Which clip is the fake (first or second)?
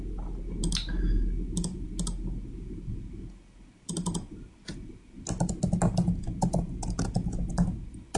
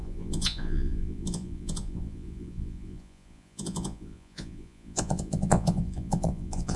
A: second